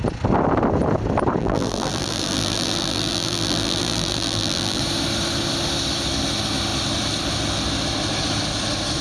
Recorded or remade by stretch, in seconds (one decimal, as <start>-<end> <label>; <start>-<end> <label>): 0.0-1.4 recorded; 1.4-4.8 remade; 4.8-9.0 recorded